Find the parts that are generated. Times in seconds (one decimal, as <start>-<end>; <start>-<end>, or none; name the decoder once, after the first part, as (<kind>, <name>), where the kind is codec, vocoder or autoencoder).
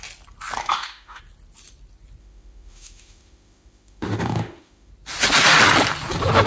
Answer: 0.6-1.2 (autoencoder, DAC-VAE); 2.2-4.9